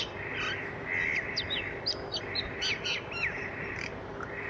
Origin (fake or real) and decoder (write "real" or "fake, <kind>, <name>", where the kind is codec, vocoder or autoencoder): real